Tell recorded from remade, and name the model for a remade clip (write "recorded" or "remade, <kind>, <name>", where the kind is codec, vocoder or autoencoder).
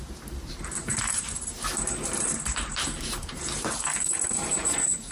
remade, vocoder, BigVGAN v2